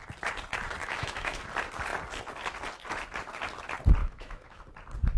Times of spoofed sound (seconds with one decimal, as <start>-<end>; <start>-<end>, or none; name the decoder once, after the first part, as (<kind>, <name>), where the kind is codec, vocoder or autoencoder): 0.8-1.4 (autoencoder, DAC-VAE); 4.0-4.6